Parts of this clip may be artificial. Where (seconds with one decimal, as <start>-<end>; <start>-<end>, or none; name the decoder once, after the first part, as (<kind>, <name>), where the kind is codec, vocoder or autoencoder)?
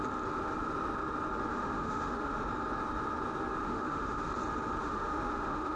1.5-2.5 (autoencoder, DAC-VAE); 3.6-4.3; 4.8-5.8